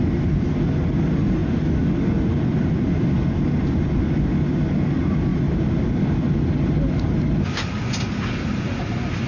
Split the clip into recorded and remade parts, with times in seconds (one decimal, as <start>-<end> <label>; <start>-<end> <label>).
0.0-9.3 recorded